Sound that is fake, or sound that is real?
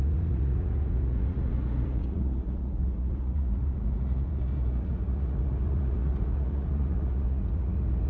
fake